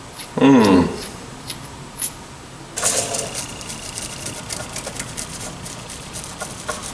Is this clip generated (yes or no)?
no